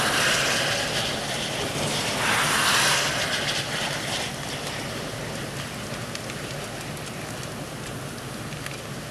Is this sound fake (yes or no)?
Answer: no